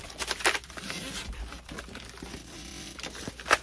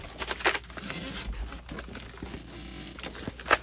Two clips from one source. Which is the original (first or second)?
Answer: second